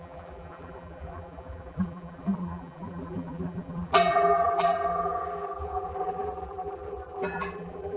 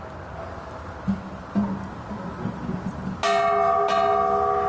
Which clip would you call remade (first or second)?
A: first